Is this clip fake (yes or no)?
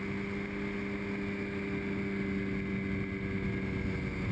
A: no